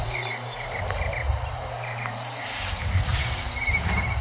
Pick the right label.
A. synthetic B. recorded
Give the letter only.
A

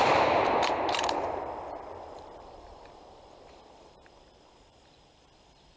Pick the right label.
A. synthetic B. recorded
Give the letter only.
A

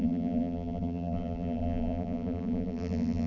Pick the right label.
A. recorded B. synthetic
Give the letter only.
B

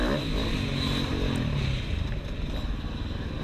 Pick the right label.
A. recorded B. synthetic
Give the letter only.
A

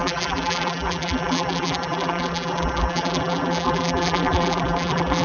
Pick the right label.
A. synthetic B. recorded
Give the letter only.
A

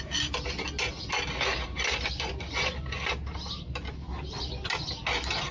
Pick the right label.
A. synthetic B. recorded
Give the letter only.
B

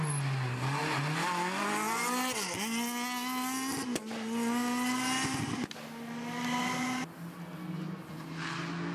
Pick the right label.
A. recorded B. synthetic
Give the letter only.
A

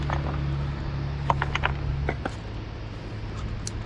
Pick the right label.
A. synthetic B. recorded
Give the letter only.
B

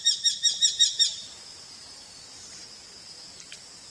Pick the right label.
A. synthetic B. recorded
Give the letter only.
A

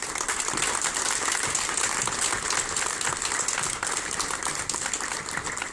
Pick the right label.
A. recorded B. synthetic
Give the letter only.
A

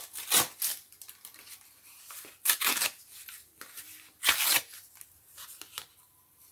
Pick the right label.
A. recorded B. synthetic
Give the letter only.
B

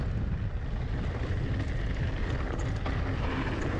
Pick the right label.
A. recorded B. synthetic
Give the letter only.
A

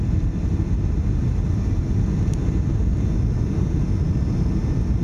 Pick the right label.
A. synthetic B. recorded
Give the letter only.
B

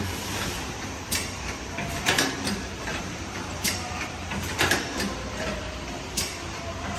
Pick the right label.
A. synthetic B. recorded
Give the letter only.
A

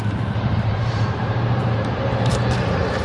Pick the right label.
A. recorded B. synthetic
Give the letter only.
B